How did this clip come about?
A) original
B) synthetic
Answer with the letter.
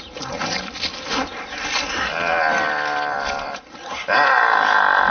A